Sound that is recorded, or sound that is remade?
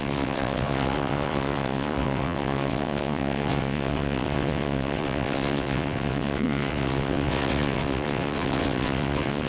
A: remade